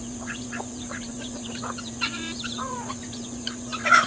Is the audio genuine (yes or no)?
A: no